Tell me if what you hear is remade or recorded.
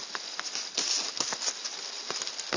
recorded